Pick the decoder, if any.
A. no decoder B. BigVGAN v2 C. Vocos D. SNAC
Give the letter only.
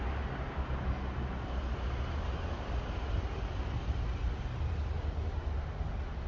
A